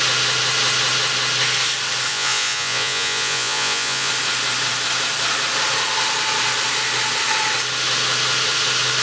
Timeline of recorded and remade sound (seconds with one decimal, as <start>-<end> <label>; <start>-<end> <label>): 0.0-2.1 recorded; 2.1-4.1 remade; 4.1-9.0 recorded